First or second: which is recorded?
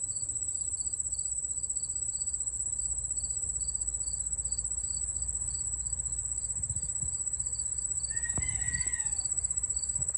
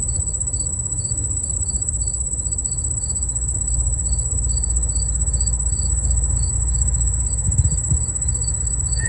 first